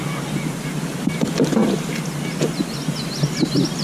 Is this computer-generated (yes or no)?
no